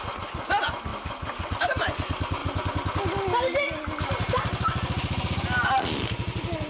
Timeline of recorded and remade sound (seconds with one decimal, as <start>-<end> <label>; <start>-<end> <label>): 0.0-6.7 recorded